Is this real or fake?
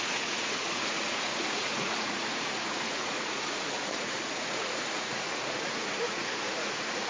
fake